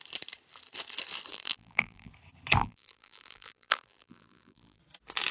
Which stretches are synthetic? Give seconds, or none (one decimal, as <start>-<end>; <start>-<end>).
1.3-2.1; 2.6-4.8